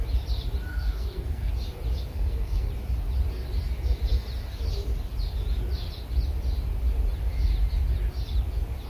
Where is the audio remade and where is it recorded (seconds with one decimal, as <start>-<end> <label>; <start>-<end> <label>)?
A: 0.0-0.7 recorded; 0.7-1.5 remade; 1.5-2.1 recorded; 2.1-2.7 remade; 2.7-8.9 recorded